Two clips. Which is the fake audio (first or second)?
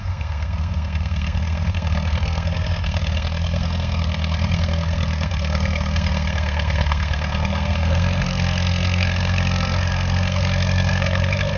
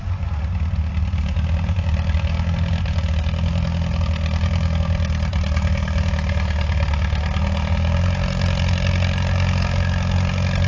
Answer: first